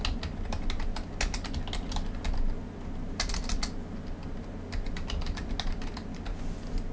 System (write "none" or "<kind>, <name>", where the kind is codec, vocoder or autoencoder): none